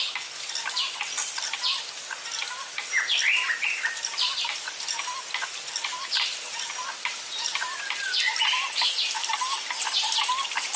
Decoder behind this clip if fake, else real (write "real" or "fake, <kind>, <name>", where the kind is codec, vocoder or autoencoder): real